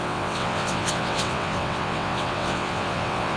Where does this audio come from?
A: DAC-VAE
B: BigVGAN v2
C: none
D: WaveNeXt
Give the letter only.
D